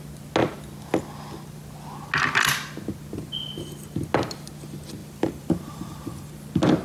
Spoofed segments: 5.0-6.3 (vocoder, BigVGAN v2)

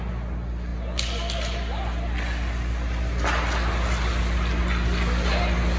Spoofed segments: none

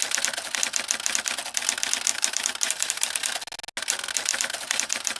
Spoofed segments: 2.1-3.1 (vocoder, BigVGAN v2); 4.3-5.2